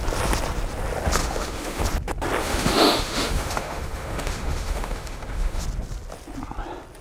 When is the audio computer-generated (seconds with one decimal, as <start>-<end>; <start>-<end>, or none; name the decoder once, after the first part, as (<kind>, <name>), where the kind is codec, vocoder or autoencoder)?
1.2-1.8 (autoencoder, DAC-VAE); 2.4-5.6

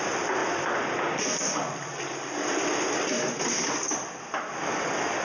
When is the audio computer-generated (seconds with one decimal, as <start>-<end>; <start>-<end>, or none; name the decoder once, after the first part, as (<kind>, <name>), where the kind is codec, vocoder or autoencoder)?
none

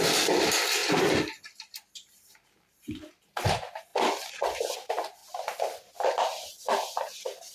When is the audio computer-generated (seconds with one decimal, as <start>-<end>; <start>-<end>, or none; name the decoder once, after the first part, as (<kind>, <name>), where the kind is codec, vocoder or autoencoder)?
none

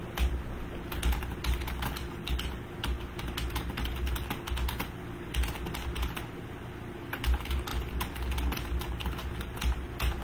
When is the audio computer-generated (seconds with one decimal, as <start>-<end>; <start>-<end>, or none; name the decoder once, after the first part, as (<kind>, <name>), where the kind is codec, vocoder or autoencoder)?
none